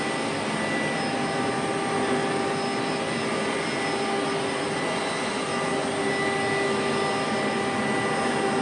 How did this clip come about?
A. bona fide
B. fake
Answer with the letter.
A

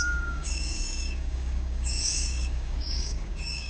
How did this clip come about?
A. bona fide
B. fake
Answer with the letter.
B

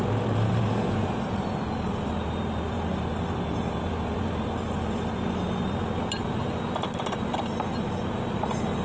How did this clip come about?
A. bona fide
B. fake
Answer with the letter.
A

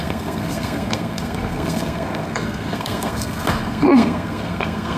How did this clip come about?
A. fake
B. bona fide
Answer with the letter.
A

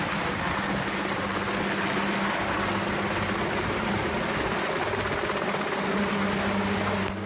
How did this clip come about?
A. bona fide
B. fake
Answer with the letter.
A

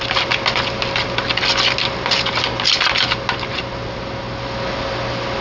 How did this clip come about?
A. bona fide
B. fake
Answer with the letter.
A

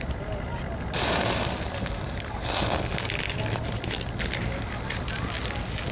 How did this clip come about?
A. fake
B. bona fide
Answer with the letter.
B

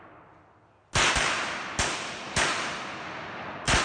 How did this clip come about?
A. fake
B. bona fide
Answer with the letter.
B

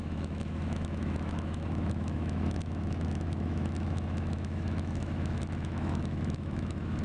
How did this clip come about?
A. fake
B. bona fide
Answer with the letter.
A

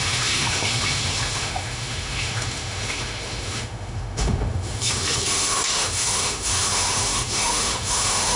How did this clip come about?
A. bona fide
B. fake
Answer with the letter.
B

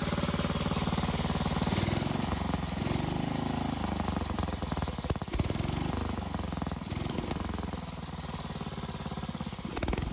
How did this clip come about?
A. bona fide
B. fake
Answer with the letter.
A